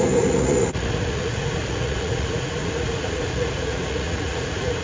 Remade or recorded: remade